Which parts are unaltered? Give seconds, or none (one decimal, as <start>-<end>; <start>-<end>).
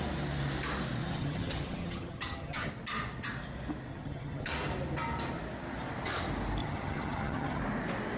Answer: 0.0-1.0; 2.7-3.9; 4.5-6.6; 7.6-8.2